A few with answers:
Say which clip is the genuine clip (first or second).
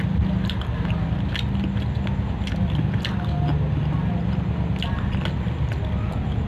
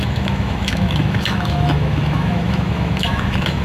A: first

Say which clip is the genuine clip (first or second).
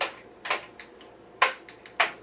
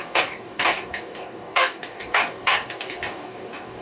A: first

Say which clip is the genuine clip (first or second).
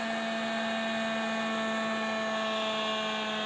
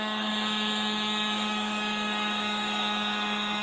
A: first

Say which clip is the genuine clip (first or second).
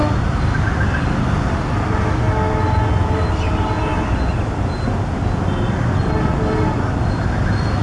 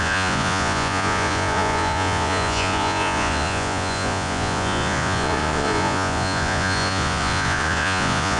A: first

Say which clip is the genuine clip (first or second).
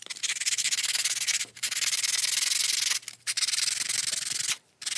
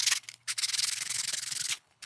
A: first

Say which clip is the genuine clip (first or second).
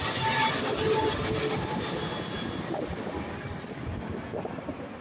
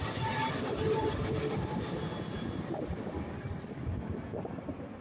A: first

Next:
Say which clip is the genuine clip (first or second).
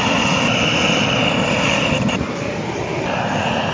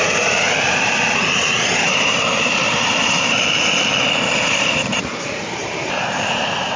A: first